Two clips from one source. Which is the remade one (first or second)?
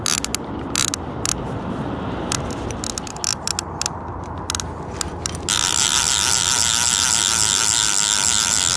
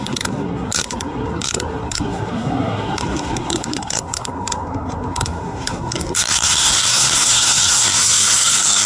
second